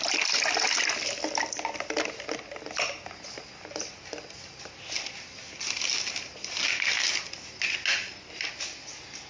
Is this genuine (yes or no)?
yes